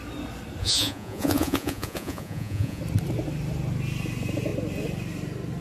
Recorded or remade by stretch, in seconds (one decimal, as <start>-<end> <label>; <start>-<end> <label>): 0.0-0.6 recorded; 0.6-2.8 remade; 2.8-5.6 recorded